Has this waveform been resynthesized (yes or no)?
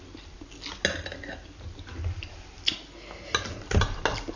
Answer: no